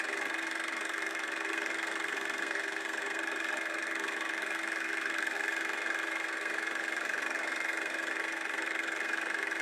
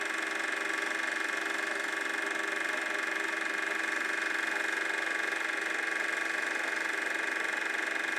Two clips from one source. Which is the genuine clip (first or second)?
second